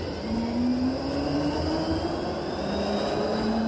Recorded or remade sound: recorded